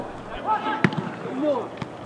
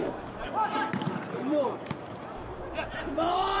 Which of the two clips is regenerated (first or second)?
second